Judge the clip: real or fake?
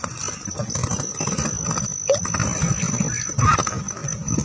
real